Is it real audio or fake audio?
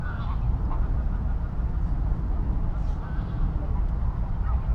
real